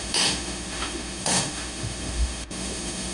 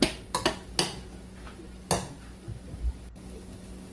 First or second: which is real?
second